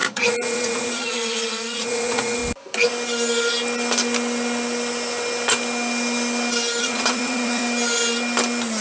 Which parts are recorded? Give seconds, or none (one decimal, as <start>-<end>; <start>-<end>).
2.4-6.8; 7.6-8.8